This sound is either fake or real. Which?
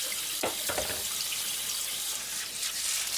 fake